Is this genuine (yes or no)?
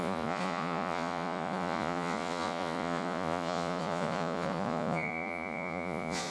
no